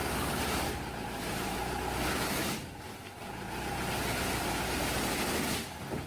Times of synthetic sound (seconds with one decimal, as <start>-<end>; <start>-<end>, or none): none

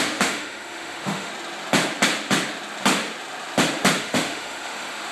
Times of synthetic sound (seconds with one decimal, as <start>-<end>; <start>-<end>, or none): 0.0-1.3; 4.0-5.1

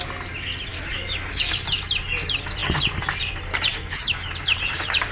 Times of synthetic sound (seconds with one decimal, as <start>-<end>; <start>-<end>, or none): 0.7-1.5; 3.7-4.3